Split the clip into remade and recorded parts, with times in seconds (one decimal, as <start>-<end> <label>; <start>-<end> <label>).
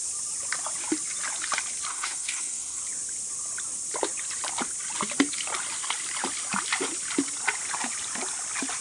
0.0-1.9 recorded; 1.9-2.8 remade; 2.8-8.8 recorded